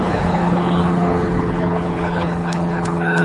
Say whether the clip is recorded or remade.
remade